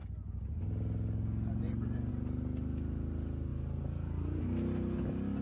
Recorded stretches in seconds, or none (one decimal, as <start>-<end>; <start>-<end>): 0.0-5.4